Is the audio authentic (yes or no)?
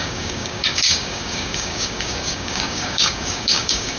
no